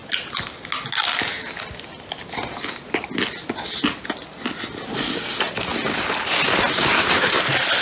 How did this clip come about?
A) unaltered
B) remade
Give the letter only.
A